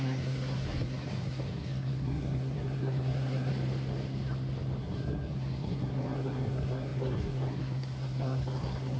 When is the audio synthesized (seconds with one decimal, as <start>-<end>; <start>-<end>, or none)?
0.0-3.5; 4.8-9.0